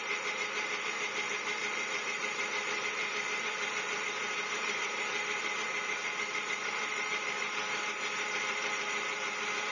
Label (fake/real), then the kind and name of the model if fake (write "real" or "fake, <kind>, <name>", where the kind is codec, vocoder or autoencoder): fake, vocoder, BigVGAN v2